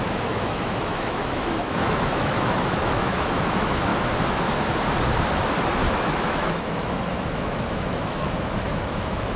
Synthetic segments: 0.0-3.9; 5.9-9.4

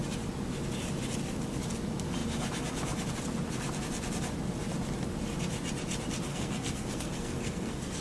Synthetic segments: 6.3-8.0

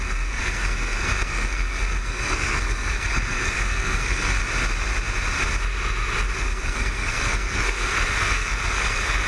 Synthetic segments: 0.0-4.4; 6.4-9.3